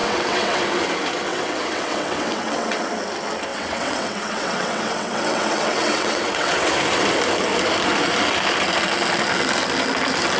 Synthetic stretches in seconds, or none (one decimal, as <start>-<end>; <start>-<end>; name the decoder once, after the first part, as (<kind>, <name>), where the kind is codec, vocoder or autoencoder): 0.0-0.6 (vocoder, WaveNeXt); 1.3-2.8; 3.5-6.7